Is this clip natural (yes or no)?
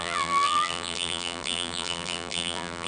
no